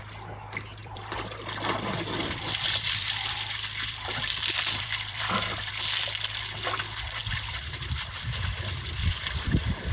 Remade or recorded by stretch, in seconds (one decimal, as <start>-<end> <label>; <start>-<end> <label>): 0.0-0.8 recorded; 0.8-5.7 remade; 5.7-7.2 recorded; 7.2-8.1 remade; 8.1-9.0 recorded; 9.0-9.9 remade